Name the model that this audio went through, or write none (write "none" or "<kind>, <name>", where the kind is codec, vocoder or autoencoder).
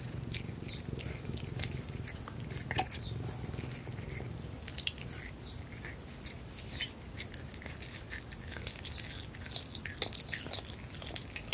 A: none